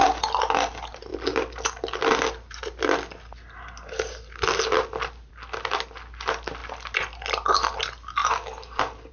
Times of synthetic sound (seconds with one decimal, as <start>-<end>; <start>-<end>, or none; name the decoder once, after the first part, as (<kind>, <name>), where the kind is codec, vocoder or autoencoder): none